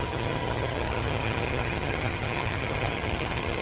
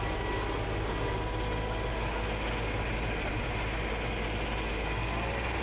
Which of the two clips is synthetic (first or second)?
first